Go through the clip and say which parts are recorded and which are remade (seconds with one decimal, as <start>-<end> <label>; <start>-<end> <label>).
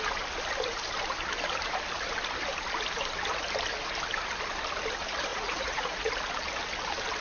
0.0-5.3 recorded; 5.3-6.1 remade; 6.1-7.2 recorded